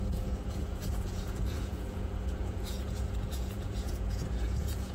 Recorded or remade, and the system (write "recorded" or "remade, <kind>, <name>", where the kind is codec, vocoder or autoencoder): remade, vocoder, Vocos